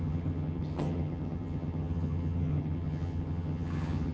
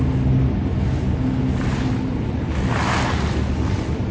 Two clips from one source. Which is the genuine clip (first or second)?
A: second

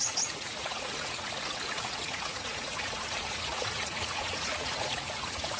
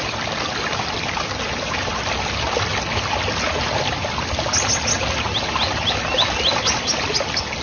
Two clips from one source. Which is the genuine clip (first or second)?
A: second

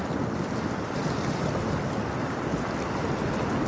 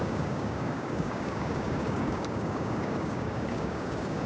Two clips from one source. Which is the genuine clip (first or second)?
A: first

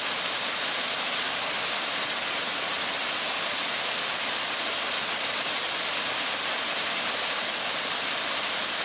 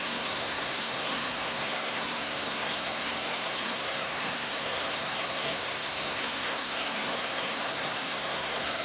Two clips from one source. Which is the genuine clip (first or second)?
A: first